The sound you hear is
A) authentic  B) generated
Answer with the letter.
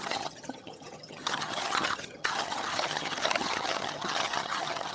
B